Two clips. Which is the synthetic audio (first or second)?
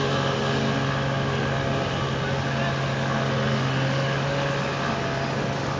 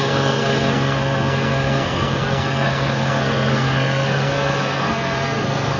second